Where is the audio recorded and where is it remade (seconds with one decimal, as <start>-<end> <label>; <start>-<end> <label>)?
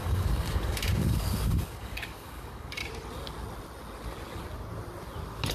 0.0-2.8 remade; 2.8-5.5 recorded